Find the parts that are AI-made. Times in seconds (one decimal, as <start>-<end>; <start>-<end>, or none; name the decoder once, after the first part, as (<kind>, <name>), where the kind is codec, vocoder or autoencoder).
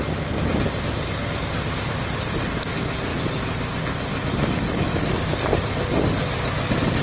none